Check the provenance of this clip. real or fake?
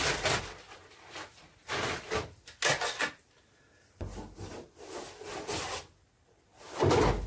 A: real